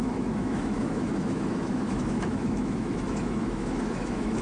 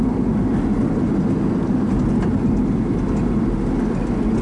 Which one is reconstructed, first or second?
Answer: first